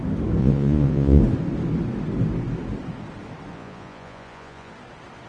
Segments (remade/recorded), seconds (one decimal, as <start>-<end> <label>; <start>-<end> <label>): 0.0-0.4 recorded; 0.4-1.2 remade; 1.2-3.5 recorded; 3.5-4.7 remade; 4.7-5.3 recorded